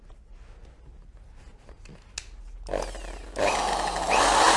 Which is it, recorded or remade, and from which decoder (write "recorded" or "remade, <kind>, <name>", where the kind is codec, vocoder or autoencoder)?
recorded